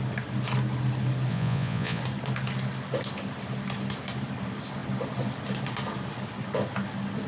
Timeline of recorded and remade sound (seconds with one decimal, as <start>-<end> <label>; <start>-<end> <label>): 0.0-1.3 recorded; 1.3-2.0 remade; 2.0-7.3 recorded